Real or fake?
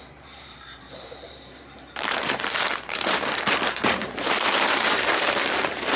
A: fake